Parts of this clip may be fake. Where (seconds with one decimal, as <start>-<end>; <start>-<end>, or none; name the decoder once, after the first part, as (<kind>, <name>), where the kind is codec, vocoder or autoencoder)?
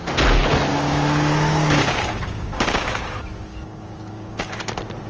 0.7-3.1 (codec, DAC); 3.5-4.6